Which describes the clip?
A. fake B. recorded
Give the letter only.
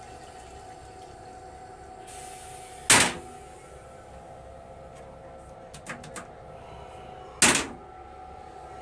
B